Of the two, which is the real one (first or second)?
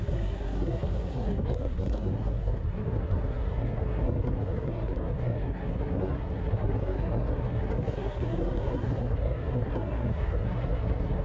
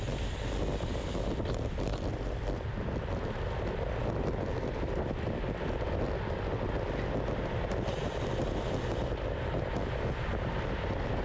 second